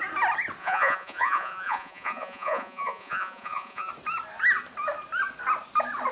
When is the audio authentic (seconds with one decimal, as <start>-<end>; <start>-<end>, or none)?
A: 0.0-0.6; 3.9-6.1